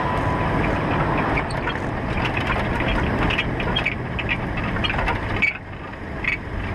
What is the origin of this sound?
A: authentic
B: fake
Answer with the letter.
A